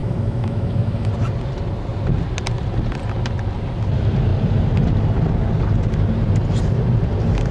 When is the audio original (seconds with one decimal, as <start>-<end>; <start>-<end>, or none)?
1.1-7.5